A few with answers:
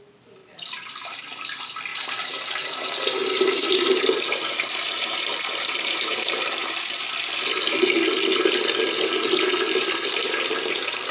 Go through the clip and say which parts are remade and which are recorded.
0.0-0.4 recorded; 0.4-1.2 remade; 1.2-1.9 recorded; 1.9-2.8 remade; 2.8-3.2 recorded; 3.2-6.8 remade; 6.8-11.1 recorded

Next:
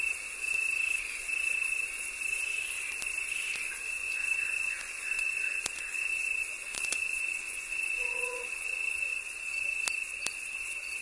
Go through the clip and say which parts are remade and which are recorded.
0.0-4.0 recorded; 4.0-6.3 remade; 6.3-6.7 recorded; 6.7-9.8 remade; 9.8-11.0 recorded